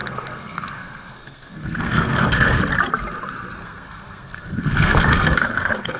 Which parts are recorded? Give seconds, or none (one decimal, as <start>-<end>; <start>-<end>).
2.6-3.6